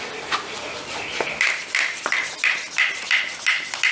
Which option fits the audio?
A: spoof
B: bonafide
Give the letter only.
A